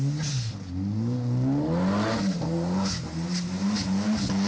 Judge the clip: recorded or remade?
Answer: recorded